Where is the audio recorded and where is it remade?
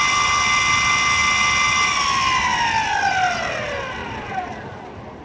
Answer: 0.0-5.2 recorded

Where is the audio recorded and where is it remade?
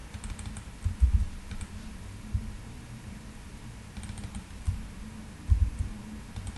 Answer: 0.0-4.0 remade; 4.0-5.2 recorded; 5.2-6.0 remade; 6.0-6.6 recorded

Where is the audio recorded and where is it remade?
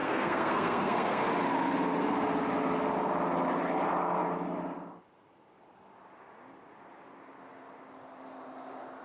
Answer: 0.0-1.3 remade; 1.3-9.0 recorded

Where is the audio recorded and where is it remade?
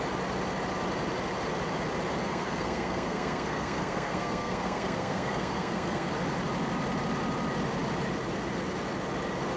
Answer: 0.0-2.2 recorded; 2.2-6.1 remade; 6.1-9.6 recorded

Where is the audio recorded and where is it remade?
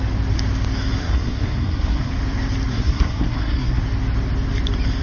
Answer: 0.0-1.0 recorded; 1.0-2.1 remade; 2.1-2.7 recorded; 2.7-3.8 remade; 3.8-5.0 recorded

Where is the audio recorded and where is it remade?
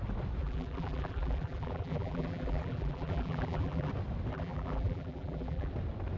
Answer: 0.0-0.4 recorded; 0.4-3.9 remade; 3.9-4.3 recorded; 4.3-5.7 remade; 5.7-6.2 recorded